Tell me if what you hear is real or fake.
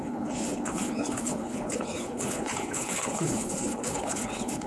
fake